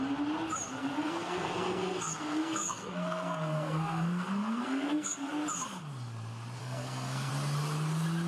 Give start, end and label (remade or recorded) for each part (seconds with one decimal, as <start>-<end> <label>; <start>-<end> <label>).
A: 0.0-0.7 recorded; 0.7-5.3 remade; 5.3-6.6 recorded; 6.6-7.3 remade; 7.3-8.3 recorded